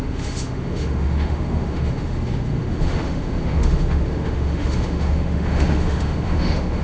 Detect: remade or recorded remade